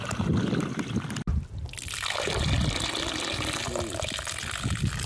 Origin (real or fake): real